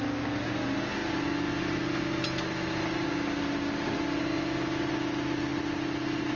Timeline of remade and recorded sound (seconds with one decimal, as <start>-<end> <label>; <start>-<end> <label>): 0.0-6.3 recorded